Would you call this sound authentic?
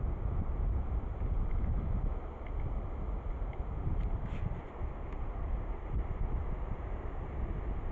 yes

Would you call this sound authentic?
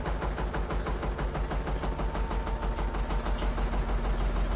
yes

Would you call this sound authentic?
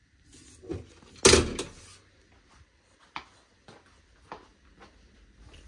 yes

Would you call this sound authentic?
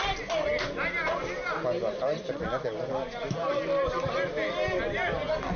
yes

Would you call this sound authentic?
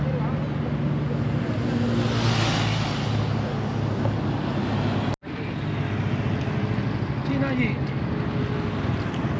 yes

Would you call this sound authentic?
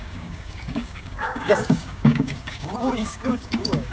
no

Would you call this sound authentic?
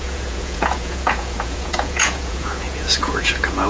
no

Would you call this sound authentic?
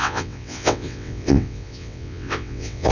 no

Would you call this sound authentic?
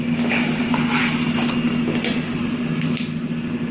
yes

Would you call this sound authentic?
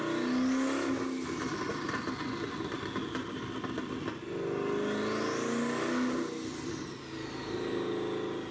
yes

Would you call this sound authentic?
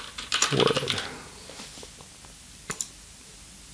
yes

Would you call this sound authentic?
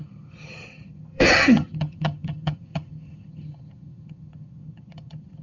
no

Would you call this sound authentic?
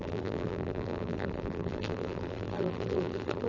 no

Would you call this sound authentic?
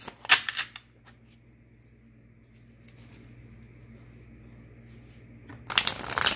yes